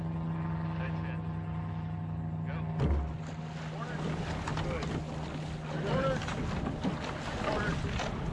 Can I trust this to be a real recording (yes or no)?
yes